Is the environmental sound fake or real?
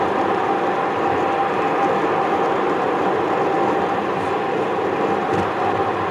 real